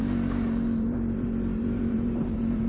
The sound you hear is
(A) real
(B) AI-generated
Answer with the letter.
B